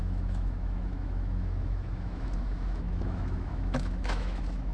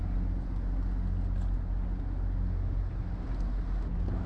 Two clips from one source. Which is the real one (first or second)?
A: second